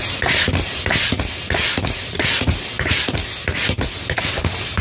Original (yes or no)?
yes